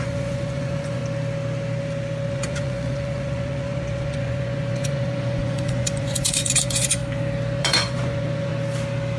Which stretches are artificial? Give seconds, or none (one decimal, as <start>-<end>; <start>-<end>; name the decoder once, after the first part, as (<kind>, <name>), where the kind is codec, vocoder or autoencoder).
0.0-1.0 (vocoder, Vocos); 2.3-7.0; 7.6-8.5